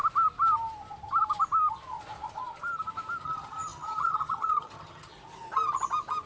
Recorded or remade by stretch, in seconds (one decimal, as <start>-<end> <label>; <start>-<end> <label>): 0.0-3.2 recorded; 3.2-5.1 remade; 5.1-6.3 recorded